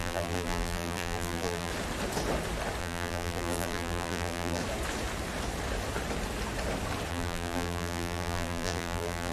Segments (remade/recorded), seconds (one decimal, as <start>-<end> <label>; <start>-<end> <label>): 0.0-1.7 remade; 1.7-2.8 recorded; 2.8-4.6 remade; 4.6-7.1 recorded; 7.1-9.3 remade